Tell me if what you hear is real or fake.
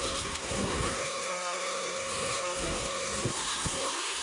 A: fake